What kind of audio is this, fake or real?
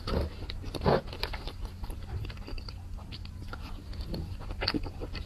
fake